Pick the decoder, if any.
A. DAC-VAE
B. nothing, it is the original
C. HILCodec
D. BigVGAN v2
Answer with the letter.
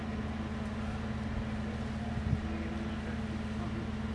B